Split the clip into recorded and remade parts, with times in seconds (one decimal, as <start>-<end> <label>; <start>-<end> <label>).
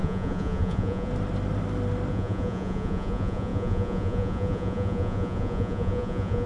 0.0-1.1 remade; 1.1-2.1 recorded; 2.1-6.5 remade